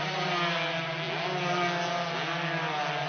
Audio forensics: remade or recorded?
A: recorded